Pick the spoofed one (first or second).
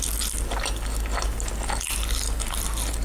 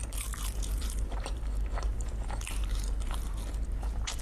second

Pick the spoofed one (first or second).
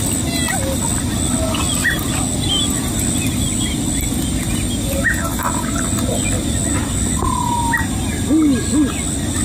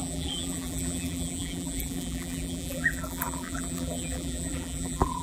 second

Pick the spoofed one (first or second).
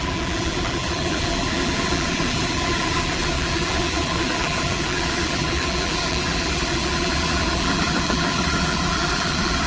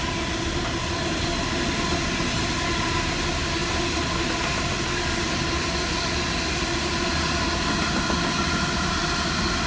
first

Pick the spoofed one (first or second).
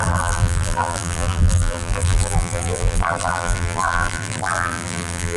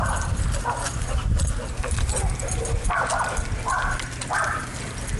first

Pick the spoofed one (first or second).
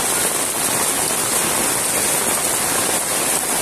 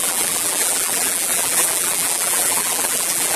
second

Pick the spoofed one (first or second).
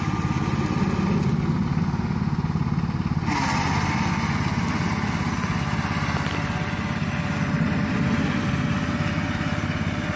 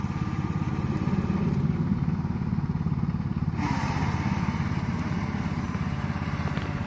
second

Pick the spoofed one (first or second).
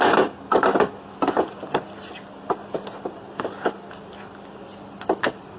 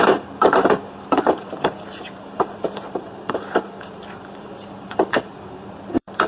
second